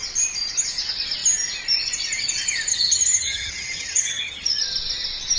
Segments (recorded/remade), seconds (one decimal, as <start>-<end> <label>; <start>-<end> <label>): 0.0-2.7 recorded; 2.7-4.6 remade; 4.6-5.4 recorded